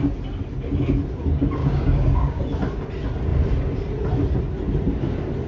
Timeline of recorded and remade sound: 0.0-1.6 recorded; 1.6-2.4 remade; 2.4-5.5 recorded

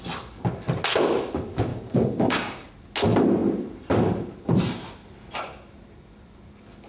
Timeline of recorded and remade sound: 0.0-1.7 recorded; 1.7-2.7 remade; 2.7-6.9 recorded

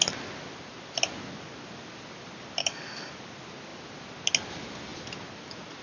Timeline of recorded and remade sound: 0.0-2.6 recorded; 2.6-3.1 remade; 3.1-5.8 recorded

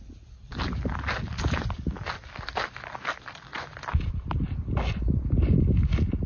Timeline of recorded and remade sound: 0.0-6.3 recorded

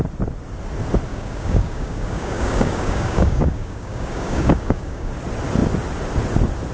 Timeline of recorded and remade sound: 0.0-1.1 recorded; 1.1-5.1 remade; 5.1-6.7 recorded

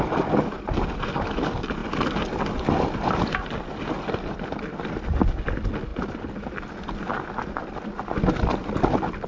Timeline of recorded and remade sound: 0.0-9.3 recorded

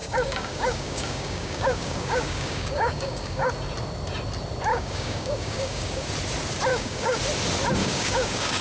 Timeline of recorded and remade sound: 0.0-3.5 remade; 3.5-4.7 recorded; 4.7-6.1 remade; 6.1-6.7 recorded; 6.7-7.2 remade; 7.2-7.8 recorded; 7.8-8.6 remade